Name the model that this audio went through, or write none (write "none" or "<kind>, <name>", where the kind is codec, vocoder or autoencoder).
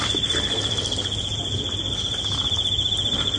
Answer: none